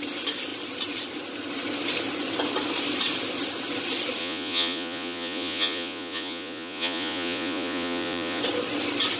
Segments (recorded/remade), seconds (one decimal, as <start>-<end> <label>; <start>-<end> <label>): 0.0-4.2 recorded; 4.2-8.4 remade; 8.4-9.2 recorded